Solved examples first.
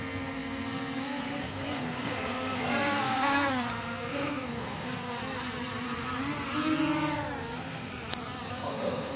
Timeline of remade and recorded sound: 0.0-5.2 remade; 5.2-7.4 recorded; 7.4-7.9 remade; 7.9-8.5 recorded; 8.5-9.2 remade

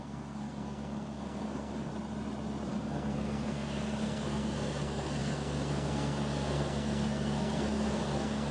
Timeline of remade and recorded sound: 0.0-1.9 remade; 1.9-2.7 recorded; 2.7-8.5 remade

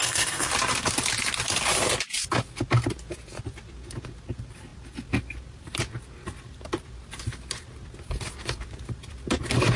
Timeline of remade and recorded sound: 0.0-0.5 remade; 0.5-9.8 recorded

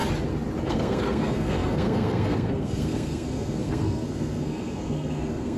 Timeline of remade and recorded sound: 0.0-0.7 recorded; 0.7-5.6 remade

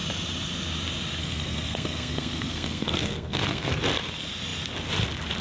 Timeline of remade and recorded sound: 0.0-1.2 recorded; 1.2-3.8 remade; 3.8-5.4 recorded

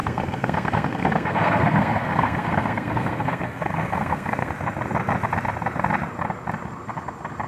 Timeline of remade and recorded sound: 0.0-4.5 remade; 4.5-7.5 recorded